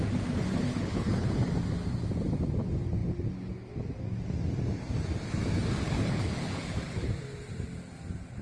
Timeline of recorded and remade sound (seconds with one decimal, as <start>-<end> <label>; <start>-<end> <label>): 0.0-0.5 recorded; 0.5-1.3 remade; 1.3-5.8 recorded; 5.8-7.1 remade; 7.1-8.4 recorded